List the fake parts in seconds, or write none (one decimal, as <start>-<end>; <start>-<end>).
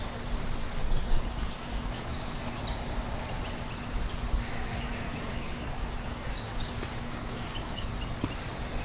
0.6-2.6; 4.7-7.9